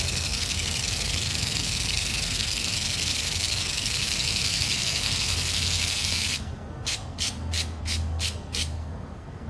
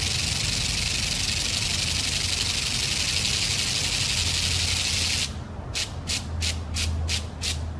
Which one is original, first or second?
second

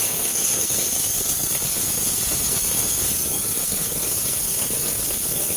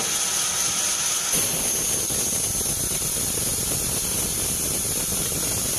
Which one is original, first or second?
second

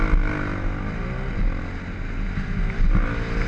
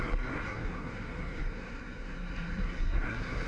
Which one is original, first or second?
first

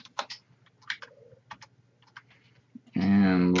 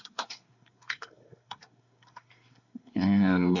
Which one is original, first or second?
first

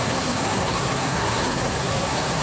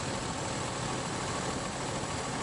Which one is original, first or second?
second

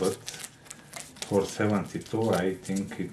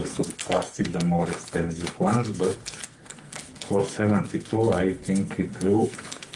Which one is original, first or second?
first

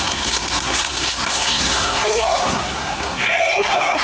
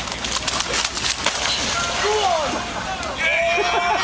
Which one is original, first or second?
second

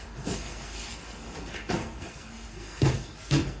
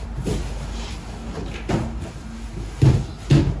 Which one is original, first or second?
second